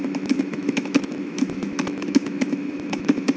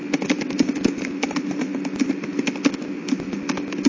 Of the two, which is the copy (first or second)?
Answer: first